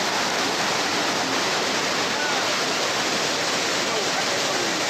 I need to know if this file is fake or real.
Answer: real